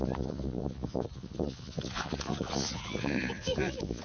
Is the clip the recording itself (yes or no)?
no